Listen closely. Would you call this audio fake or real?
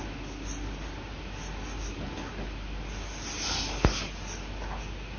real